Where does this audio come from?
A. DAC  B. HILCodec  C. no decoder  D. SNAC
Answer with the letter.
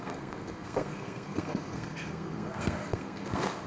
D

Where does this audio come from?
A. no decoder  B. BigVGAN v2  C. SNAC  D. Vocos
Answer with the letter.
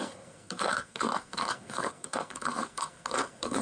C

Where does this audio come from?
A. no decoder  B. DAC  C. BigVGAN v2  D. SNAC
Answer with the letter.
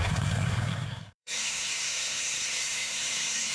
D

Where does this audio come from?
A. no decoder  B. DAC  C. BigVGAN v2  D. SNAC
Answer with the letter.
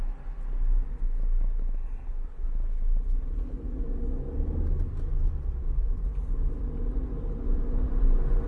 A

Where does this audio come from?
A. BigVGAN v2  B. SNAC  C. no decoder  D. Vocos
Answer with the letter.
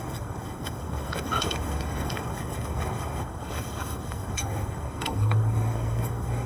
B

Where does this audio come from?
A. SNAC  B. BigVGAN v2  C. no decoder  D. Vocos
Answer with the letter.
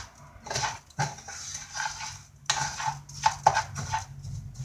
C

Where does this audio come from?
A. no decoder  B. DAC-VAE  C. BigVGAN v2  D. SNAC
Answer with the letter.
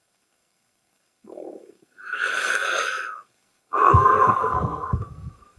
D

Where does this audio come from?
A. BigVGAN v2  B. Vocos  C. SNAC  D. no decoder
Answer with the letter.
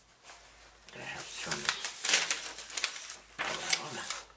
D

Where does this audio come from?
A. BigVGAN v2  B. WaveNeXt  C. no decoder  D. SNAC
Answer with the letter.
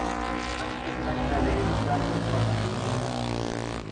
C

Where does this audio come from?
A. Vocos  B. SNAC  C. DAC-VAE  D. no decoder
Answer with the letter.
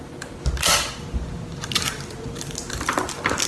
D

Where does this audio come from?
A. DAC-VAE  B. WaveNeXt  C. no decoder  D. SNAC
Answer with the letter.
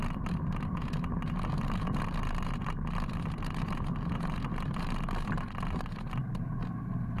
C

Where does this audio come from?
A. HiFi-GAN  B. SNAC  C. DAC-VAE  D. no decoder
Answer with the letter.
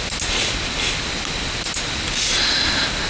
D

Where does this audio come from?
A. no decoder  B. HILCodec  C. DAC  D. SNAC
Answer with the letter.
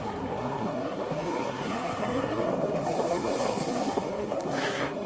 D